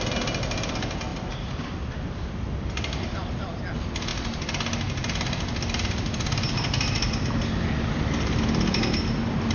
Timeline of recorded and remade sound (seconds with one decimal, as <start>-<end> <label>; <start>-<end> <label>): 0.0-9.5 recorded

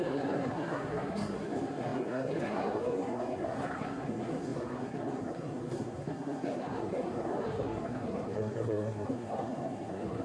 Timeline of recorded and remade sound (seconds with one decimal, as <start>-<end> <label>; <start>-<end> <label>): 0.0-10.2 remade

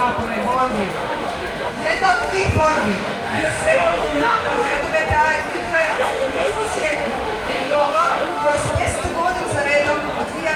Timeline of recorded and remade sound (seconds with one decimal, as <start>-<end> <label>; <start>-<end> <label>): 0.0-0.6 recorded; 0.6-4.8 remade; 4.8-5.5 recorded; 5.5-8.7 remade; 8.7-10.6 recorded